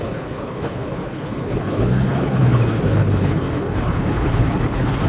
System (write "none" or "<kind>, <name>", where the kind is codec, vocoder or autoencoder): codec, HILCodec